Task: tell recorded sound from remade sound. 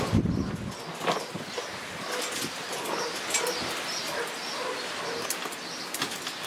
recorded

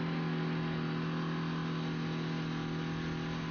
recorded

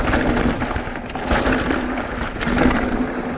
recorded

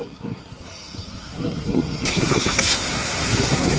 remade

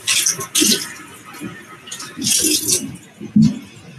recorded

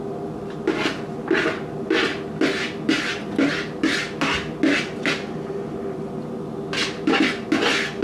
recorded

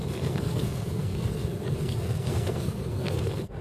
remade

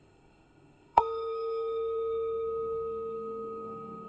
remade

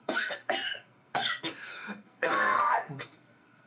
remade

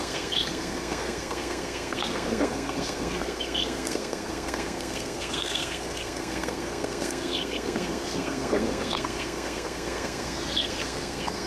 remade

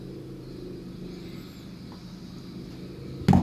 recorded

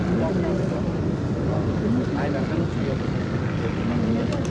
recorded